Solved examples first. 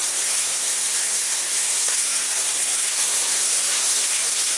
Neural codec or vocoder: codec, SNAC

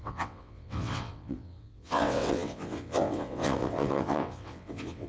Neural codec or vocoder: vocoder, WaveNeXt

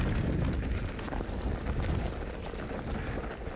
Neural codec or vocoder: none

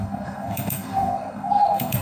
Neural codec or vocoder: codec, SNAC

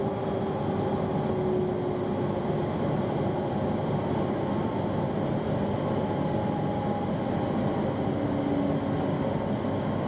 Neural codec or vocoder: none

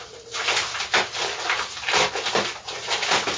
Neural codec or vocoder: none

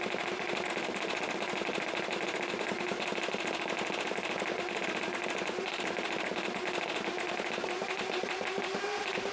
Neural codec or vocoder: none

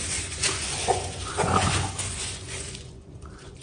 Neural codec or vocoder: vocoder, Vocos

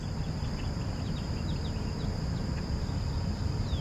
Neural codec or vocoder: none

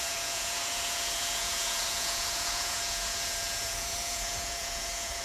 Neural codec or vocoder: vocoder, Vocos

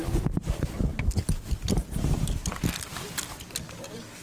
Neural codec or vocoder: none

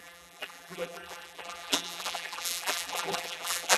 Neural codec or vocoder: vocoder, BigVGAN v2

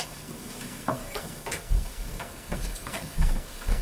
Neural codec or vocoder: codec, SNAC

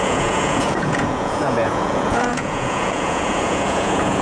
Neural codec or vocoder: vocoder, Vocos